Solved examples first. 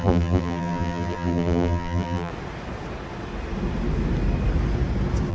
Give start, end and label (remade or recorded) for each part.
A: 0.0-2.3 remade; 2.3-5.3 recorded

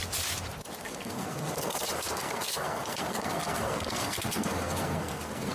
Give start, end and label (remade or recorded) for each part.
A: 0.0-0.8 recorded; 0.8-5.5 remade